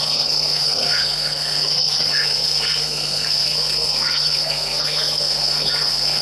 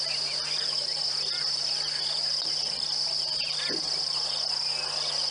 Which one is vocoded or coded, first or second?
first